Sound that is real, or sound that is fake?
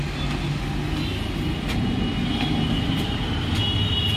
real